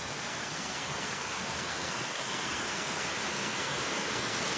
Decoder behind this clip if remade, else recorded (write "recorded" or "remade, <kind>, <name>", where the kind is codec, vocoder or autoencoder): remade, codec, SNAC